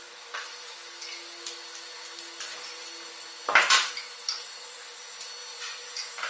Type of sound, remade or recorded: recorded